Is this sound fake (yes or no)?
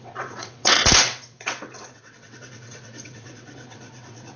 yes